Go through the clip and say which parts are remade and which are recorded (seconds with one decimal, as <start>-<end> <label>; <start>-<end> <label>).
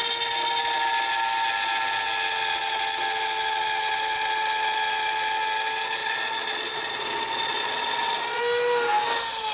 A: 0.0-6.0 recorded; 6.0-8.4 remade; 8.4-9.5 recorded